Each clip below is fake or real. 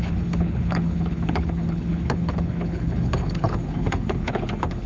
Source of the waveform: fake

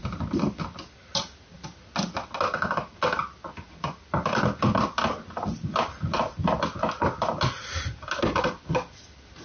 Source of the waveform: real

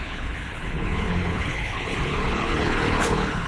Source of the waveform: fake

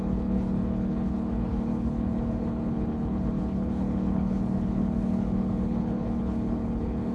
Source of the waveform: fake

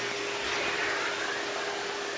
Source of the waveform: real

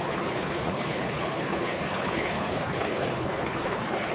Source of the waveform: fake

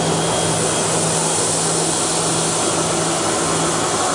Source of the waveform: real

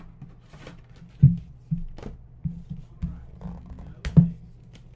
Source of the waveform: real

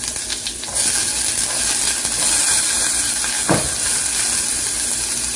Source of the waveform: real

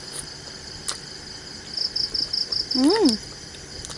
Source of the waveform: real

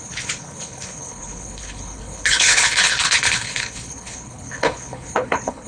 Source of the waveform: fake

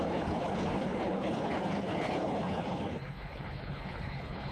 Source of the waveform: fake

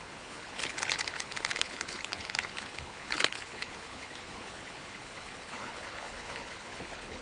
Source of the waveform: fake